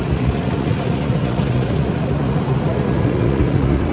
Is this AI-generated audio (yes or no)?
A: yes